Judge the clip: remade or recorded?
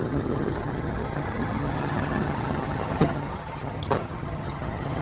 remade